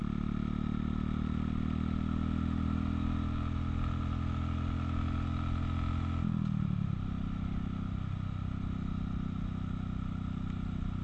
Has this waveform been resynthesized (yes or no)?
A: no